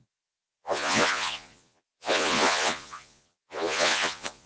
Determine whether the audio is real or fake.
fake